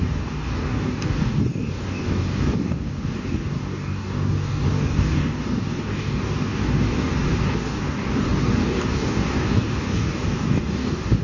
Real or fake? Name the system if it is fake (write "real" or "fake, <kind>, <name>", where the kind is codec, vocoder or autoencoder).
fake, codec, DAC